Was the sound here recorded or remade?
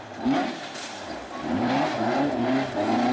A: recorded